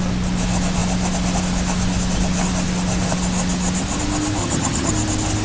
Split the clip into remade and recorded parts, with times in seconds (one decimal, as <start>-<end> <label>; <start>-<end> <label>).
0.0-4.4 recorded; 4.4-4.9 remade; 4.9-5.4 recorded